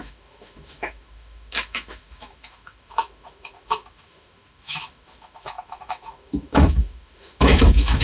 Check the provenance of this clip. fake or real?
fake